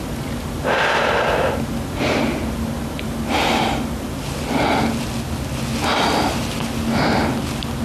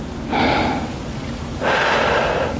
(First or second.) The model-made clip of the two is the second